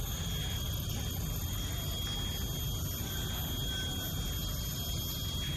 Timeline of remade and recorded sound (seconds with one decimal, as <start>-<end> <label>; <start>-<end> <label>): 0.0-0.5 recorded; 0.5-2.0 remade; 2.0-5.6 recorded